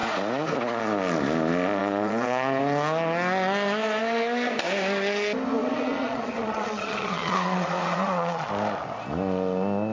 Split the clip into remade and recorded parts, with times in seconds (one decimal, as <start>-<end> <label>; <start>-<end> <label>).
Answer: 0.0-1.8 recorded; 1.8-2.6 remade; 2.6-5.6 recorded; 5.6-8.5 remade; 8.5-9.9 recorded